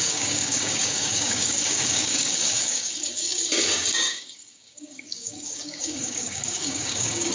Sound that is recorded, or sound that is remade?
remade